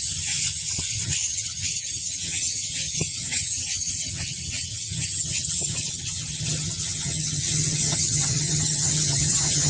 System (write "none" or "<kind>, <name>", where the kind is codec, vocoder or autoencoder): vocoder, HiFi-GAN